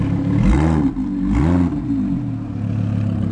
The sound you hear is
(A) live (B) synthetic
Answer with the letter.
A